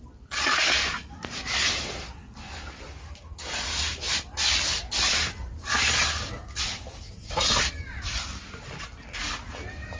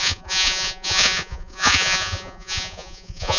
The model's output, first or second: second